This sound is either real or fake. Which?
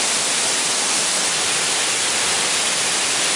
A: real